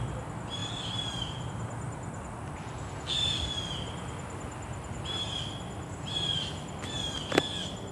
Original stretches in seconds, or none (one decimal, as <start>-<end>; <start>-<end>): 0.0-0.6; 1.5-7.9